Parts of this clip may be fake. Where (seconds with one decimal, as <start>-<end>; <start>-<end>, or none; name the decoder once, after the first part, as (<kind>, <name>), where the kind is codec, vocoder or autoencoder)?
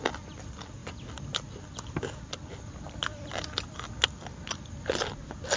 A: none